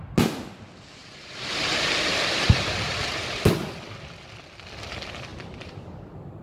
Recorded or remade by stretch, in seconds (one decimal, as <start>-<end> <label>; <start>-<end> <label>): 0.0-1.0 recorded; 1.0-3.4 remade; 3.4-6.4 recorded